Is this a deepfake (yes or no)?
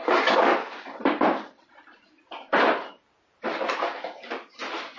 yes